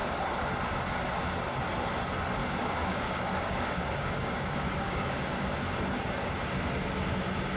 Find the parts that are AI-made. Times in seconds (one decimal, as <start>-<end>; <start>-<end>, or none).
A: 2.4-5.5